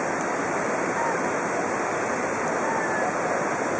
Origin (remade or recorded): recorded